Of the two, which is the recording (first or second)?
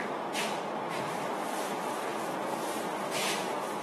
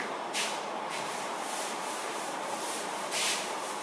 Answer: first